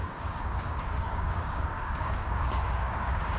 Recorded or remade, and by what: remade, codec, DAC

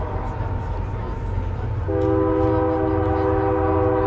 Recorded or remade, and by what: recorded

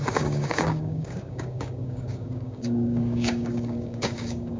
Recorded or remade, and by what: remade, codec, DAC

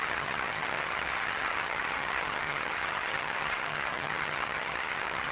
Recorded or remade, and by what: remade, vocoder, HiFi-GAN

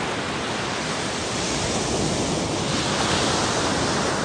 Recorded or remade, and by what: recorded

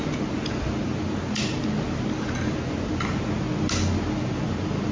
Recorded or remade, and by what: recorded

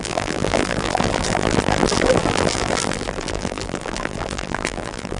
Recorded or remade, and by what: remade, vocoder, BigVGAN v2